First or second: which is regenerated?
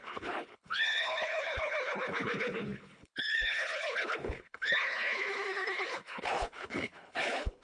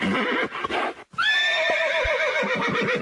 first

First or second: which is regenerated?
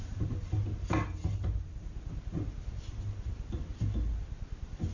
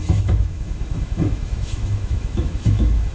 second